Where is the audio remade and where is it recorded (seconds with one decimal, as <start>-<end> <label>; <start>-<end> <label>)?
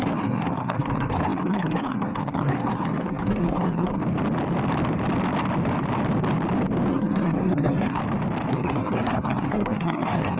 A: 0.0-4.0 remade; 4.0-6.9 recorded; 6.9-8.0 remade; 8.0-8.5 recorded; 8.5-10.4 remade